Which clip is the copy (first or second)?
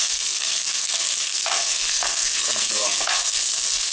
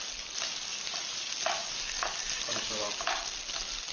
first